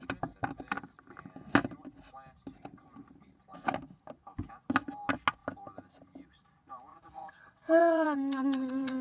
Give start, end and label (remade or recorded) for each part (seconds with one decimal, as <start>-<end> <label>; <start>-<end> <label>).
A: 0.0-6.9 recorded; 6.9-9.0 remade